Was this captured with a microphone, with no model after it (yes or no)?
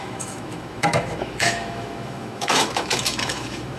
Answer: no